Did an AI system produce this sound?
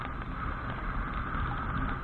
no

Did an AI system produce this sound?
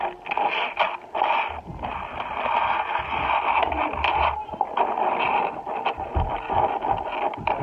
no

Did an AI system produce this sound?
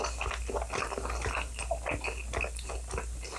no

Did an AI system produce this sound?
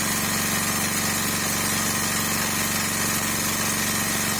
no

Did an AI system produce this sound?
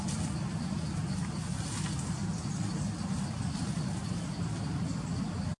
no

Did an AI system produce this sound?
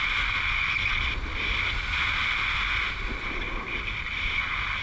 no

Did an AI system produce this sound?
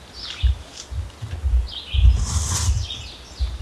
no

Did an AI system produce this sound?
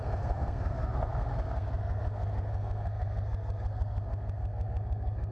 yes